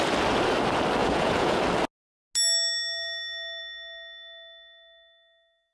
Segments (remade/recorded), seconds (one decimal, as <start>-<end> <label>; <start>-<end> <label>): 0.0-1.0 recorded; 1.0-1.6 remade; 1.6-5.7 recorded